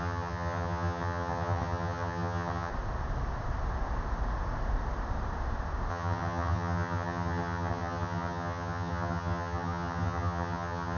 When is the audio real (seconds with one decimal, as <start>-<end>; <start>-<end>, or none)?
2.7-5.9